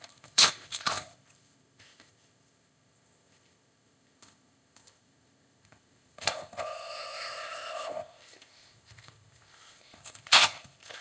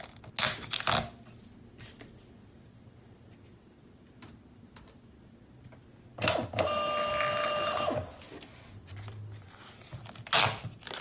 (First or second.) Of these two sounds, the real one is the second